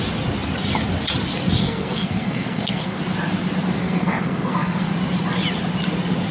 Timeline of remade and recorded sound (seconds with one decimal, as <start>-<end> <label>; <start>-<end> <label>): 0.0-1.6 recorded; 1.6-3.0 remade; 3.0-3.8 recorded; 3.8-4.9 remade; 4.9-6.3 recorded